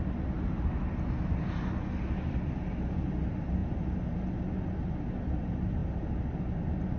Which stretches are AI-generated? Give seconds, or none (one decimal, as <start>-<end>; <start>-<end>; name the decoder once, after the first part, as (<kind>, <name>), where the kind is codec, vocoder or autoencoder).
none